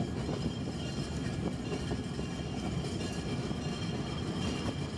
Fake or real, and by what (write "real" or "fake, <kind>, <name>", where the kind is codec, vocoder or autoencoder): real